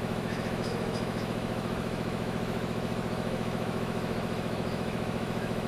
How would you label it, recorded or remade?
remade